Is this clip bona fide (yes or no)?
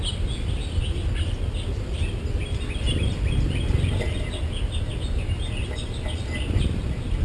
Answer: yes